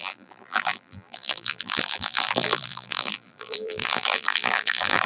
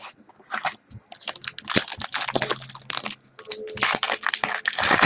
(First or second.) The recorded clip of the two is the second